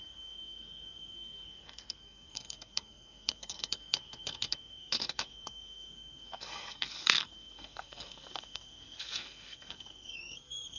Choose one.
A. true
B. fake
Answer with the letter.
B